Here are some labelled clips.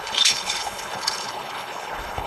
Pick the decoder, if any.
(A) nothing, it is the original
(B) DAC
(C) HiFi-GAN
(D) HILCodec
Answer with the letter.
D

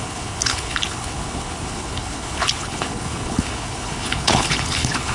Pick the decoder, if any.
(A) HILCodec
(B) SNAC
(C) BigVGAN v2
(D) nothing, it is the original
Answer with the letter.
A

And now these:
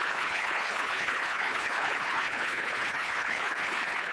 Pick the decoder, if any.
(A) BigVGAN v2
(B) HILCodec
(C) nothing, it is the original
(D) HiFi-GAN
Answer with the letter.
B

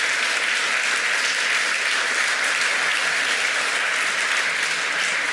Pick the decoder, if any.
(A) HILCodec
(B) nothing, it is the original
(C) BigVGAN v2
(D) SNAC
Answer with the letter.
B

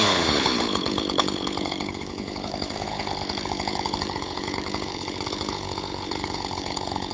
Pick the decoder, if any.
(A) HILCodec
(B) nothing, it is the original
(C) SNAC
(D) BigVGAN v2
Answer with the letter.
A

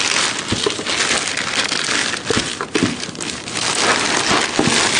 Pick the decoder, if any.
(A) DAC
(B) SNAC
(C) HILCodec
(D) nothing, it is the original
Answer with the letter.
D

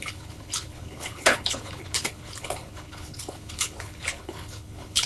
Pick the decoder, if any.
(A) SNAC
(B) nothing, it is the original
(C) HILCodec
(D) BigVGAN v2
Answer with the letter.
C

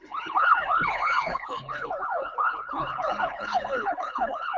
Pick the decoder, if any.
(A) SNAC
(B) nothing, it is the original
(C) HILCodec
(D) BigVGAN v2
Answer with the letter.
C